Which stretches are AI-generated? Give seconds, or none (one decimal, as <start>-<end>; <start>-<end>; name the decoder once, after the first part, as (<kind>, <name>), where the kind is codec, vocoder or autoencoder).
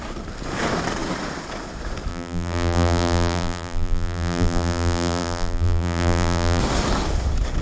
2.1-6.6 (vocoder, BigVGAN v2)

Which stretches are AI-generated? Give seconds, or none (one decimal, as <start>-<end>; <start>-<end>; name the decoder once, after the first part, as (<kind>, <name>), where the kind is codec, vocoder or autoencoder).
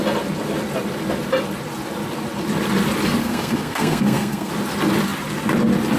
3.2-4.5 (codec, SNAC)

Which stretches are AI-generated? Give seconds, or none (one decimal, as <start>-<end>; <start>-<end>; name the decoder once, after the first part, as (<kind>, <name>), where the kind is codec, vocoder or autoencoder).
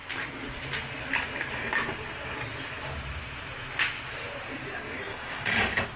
5.1-5.6 (codec, DAC)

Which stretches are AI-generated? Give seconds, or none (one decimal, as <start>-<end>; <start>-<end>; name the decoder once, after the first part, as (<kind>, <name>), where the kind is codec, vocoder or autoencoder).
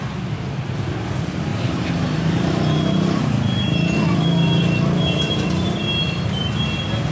1.5-2.0 (vocoder, BigVGAN v2)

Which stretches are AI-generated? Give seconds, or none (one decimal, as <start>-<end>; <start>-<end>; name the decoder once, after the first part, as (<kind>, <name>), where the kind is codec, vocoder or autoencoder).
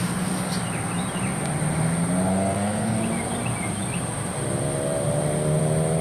2.3-3.0 (codec, SNAC)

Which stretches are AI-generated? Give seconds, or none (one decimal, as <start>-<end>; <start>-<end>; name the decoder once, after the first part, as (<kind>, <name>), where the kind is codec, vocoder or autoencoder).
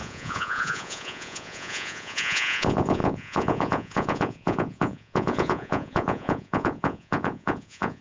0.0-8.0 (vocoder, Vocos)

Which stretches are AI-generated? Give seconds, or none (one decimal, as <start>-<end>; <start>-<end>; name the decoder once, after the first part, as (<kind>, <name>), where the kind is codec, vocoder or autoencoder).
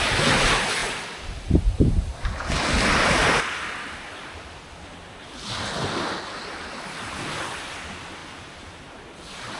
none